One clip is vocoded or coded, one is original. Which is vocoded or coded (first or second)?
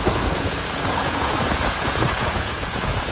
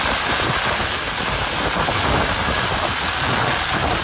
first